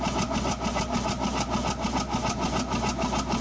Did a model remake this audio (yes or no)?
no